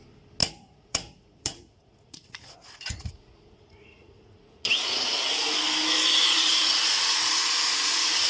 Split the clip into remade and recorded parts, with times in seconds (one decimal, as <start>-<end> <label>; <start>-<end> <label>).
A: 0.0-0.4 recorded; 0.4-5.2 remade; 5.2-6.2 recorded; 6.2-8.3 remade